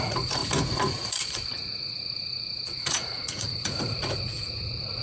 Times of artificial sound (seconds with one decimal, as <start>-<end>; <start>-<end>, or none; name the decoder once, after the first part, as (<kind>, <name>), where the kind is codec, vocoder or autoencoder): 0.0-5.0 (vocoder, Vocos)